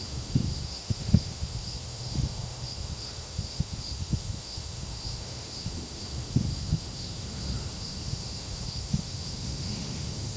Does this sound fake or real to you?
fake